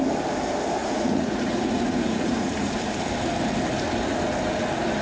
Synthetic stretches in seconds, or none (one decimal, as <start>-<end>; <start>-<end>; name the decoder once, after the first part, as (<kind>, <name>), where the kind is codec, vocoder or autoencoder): 0.8-2.7 (vocoder, Vocos)